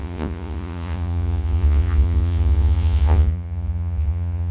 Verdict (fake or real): fake